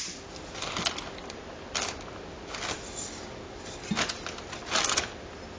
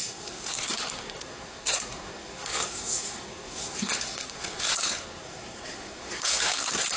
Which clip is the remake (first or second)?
second